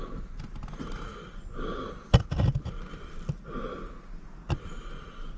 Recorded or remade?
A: recorded